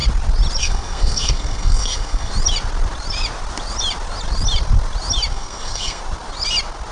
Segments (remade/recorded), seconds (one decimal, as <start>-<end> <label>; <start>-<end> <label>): 0.0-0.6 recorded; 0.6-2.3 remade; 2.3-5.3 recorded; 5.3-6.0 remade; 6.0-6.9 recorded